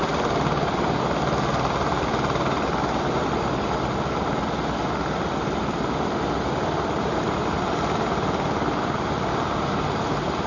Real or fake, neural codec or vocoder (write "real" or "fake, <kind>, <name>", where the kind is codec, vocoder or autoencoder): real